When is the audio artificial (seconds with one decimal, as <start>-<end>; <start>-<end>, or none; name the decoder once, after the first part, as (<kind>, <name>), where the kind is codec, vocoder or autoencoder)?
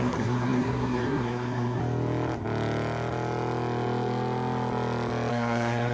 0.0-1.8 (codec, SNAC); 5.3-5.9